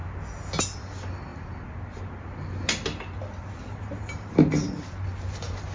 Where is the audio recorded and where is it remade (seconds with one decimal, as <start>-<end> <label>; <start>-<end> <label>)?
0.0-5.7 recorded